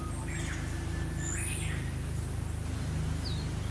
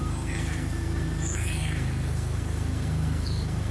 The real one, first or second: first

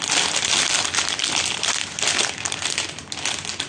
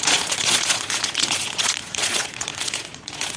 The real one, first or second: first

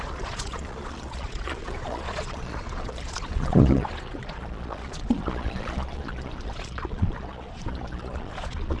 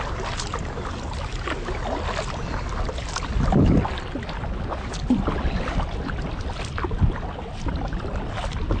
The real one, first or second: second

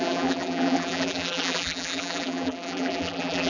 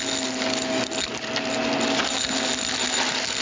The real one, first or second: second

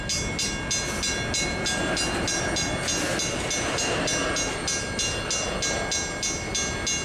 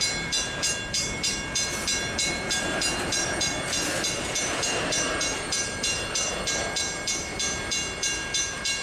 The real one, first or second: first